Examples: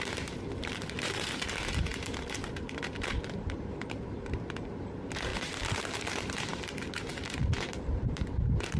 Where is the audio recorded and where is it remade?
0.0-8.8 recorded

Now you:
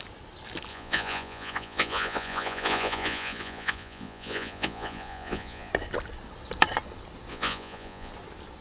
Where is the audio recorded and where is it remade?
0.0-0.7 recorded; 0.7-5.7 remade; 5.7-7.3 recorded; 7.3-8.1 remade; 8.1-8.6 recorded